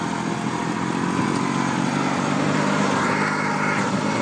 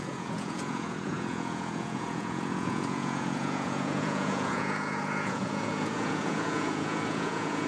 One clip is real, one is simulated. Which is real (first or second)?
first